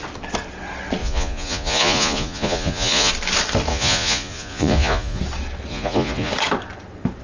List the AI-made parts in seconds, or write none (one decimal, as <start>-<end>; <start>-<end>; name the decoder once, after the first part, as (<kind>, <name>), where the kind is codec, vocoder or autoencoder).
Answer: 1.0-3.1 (vocoder, Vocos); 3.7-5.2; 5.7-6.3